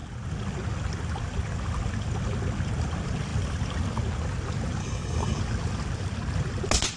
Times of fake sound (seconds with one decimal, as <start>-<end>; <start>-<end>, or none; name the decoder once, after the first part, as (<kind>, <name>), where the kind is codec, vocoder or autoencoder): 4.8-5.4 (codec, DAC)